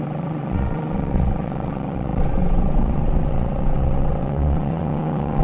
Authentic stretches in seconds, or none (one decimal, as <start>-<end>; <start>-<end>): none